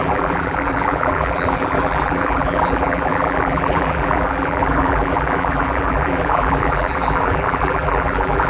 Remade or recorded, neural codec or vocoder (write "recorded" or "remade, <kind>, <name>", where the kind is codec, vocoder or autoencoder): remade, vocoder, BigVGAN v2